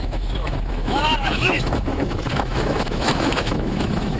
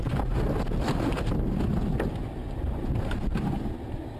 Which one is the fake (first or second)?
first